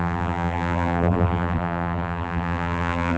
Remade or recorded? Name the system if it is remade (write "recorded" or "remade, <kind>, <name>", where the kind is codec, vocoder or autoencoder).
remade, vocoder, BigVGAN v2